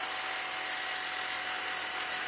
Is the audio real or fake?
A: real